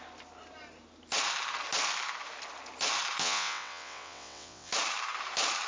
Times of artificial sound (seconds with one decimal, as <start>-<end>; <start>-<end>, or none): 3.2-4.7